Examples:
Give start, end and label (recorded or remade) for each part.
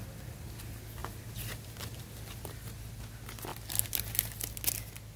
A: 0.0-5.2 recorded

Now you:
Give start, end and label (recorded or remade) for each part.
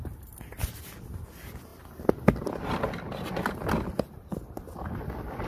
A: 0.0-5.5 recorded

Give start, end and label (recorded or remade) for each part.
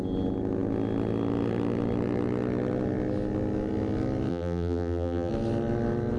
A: 0.0-4.3 recorded; 4.3-5.3 remade; 5.3-6.2 recorded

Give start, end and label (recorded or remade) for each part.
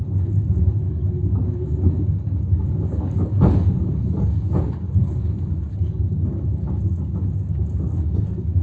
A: 0.0-0.8 recorded; 0.8-5.7 remade; 5.7-8.6 recorded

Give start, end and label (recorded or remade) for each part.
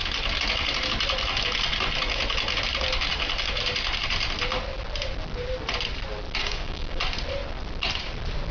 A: 0.0-6.4 recorded; 6.4-7.0 remade; 7.0-8.5 recorded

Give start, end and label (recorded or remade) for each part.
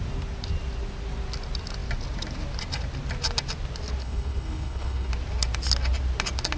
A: 0.0-4.0 recorded; 4.0-5.1 remade; 5.1-6.6 recorded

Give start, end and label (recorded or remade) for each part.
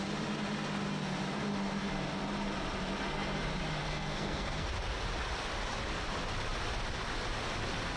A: 0.0-3.8 recorded; 3.8-4.7 remade; 4.7-8.0 recorded